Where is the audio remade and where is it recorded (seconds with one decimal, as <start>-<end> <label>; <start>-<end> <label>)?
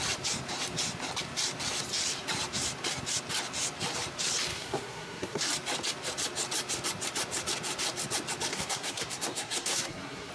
0.0-4.5 recorded; 4.5-5.4 remade; 5.4-8.5 recorded; 8.5-10.3 remade